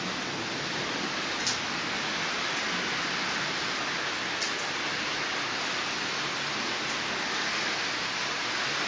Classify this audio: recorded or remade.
recorded